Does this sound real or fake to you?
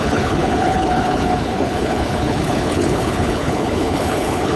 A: fake